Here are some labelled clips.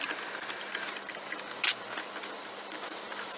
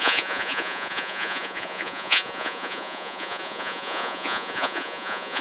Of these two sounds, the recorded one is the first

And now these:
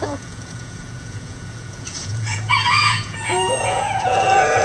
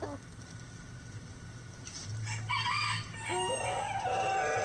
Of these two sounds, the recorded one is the second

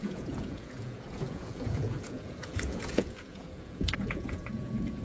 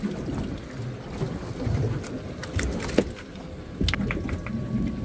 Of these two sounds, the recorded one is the second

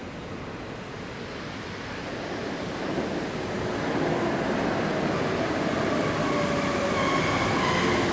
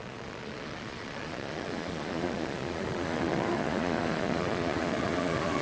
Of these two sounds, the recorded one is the first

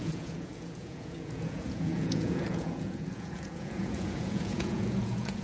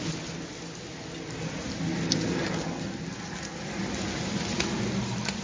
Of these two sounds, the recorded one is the second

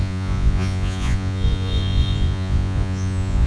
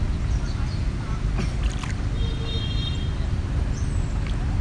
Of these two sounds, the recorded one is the second